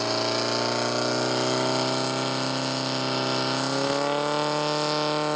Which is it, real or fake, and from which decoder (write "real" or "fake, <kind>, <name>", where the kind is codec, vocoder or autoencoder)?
real